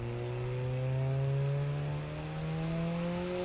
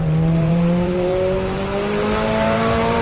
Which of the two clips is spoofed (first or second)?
second